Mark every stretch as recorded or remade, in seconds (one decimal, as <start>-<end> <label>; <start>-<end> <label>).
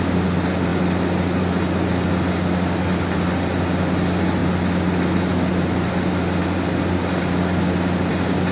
0.0-8.5 recorded